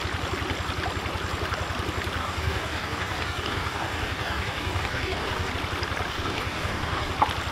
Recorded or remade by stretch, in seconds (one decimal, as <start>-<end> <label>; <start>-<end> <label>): 0.0-2.2 recorded; 2.2-5.5 remade; 5.5-6.1 recorded; 6.1-7.1 remade; 7.1-7.5 recorded